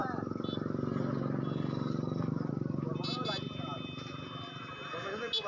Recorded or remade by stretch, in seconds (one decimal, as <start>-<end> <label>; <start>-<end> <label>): 0.0-5.5 recorded